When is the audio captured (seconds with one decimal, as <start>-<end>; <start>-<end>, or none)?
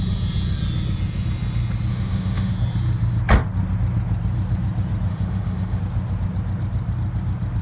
0.0-1.9; 2.5-5.1; 5.8-7.6